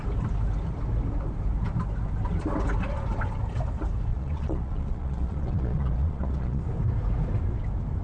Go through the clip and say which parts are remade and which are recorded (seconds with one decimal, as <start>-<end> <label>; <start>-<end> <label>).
0.0-4.1 recorded; 4.1-6.6 remade; 6.6-8.0 recorded

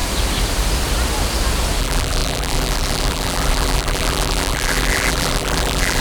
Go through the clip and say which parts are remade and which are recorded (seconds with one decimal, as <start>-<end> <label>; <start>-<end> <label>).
0.0-1.8 recorded; 1.8-6.0 remade